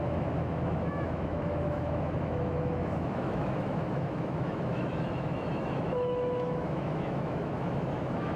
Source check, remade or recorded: remade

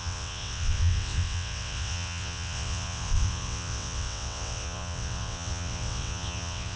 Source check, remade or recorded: remade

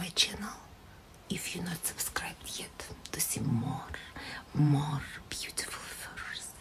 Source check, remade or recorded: remade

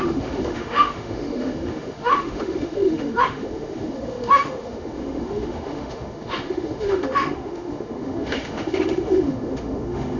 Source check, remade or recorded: remade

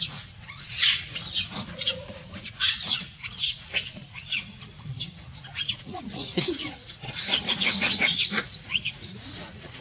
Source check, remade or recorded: remade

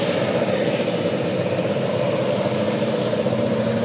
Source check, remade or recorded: remade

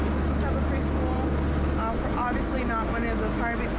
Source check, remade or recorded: recorded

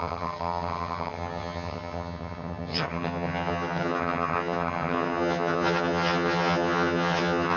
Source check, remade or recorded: remade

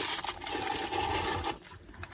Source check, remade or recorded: recorded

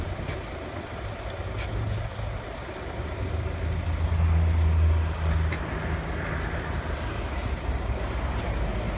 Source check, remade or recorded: recorded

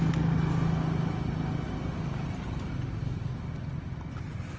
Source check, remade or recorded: recorded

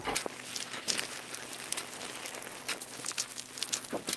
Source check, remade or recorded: remade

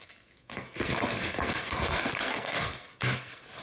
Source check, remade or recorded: remade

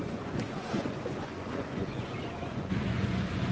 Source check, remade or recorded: remade